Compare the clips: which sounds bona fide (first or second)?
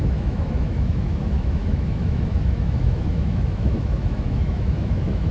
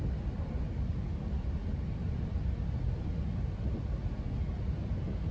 second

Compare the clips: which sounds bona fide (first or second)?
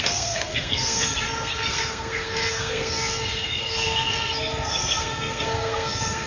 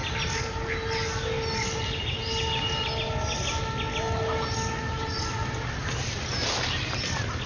second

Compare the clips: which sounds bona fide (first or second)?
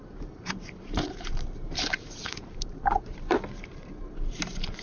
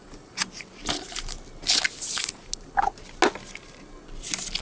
second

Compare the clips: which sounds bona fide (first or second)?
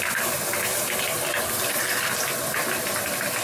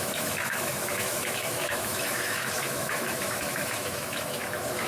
first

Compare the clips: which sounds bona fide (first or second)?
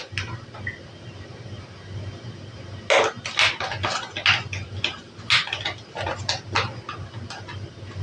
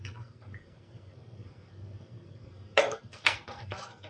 first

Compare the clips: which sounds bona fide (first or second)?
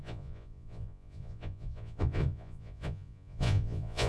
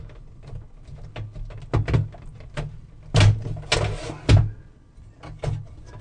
second